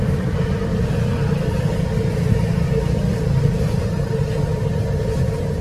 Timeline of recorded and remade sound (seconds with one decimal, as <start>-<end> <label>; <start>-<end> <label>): 0.0-3.1 recorded; 3.1-5.0 remade; 5.0-5.6 recorded